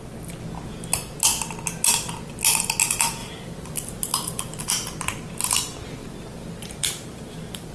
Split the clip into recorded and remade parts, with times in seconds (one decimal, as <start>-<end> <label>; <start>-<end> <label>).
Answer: 0.0-3.2 recorded; 3.2-4.7 remade; 4.7-6.0 recorded; 6.0-7.7 remade